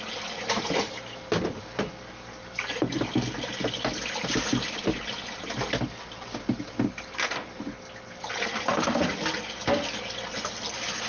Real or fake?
real